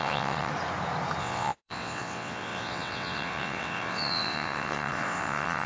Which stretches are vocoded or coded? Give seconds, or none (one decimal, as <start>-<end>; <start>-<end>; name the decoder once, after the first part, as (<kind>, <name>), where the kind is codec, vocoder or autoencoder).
0.0-0.5 (vocoder, WaveNeXt); 1.2-5.7